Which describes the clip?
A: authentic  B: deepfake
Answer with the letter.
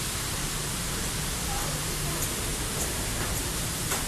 A